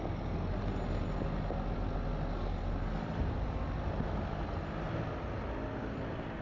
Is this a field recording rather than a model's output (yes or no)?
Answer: yes